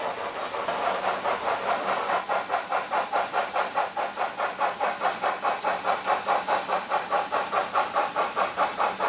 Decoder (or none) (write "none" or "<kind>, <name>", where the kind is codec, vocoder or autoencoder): vocoder, BigVGAN v2